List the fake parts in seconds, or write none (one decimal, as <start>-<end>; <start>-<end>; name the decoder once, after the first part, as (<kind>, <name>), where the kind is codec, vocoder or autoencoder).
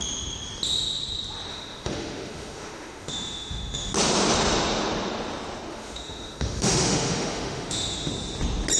1.5-3.9 (autoencoder, DAC-VAE); 5.7-8.1